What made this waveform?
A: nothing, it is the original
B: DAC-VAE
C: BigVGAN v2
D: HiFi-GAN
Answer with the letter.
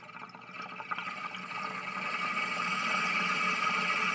A